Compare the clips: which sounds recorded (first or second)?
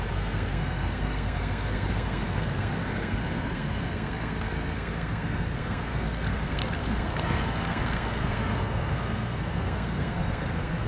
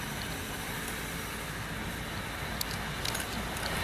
second